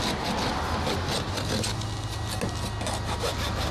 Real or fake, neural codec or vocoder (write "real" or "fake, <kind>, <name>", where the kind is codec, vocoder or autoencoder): real